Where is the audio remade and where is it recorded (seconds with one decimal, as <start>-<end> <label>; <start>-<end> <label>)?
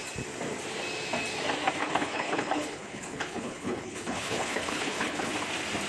0.0-1.8 recorded; 1.8-5.3 remade; 5.3-5.9 recorded